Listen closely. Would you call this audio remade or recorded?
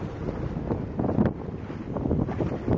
recorded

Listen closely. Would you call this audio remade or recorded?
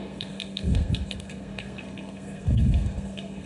remade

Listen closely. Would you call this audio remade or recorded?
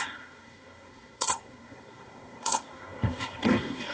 remade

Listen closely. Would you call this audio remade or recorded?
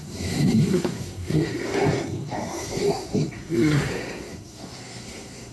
remade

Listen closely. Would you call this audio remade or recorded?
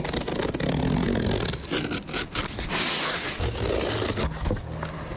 recorded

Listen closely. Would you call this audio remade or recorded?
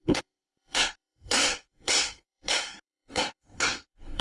remade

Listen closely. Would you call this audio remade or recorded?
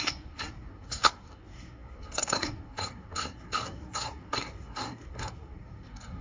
remade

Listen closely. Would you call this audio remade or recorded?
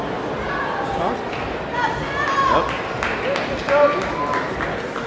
recorded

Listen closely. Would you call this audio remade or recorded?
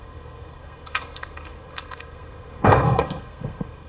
remade